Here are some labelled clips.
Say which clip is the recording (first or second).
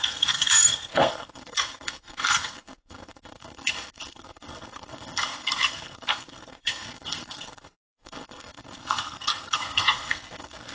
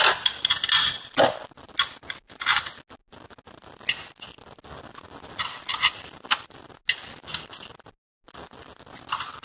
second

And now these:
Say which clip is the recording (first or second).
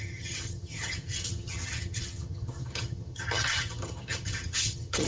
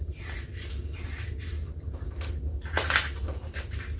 second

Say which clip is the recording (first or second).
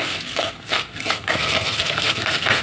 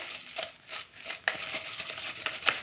second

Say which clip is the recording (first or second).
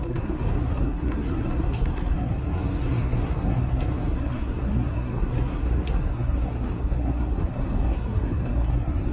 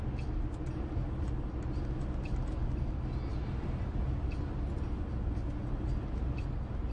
second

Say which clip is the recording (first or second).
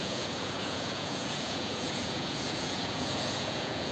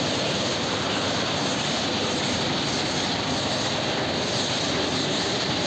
second